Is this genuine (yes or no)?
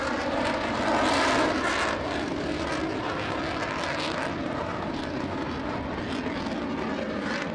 yes